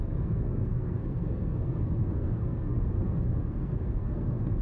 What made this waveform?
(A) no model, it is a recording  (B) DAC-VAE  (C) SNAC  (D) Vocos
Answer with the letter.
C